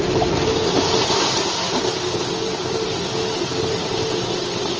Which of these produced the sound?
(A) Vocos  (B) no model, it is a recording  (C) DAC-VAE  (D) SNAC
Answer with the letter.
B